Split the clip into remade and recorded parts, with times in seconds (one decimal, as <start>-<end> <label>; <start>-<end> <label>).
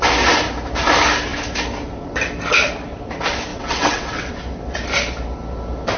0.0-3.5 recorded; 3.5-4.3 remade; 4.3-6.0 recorded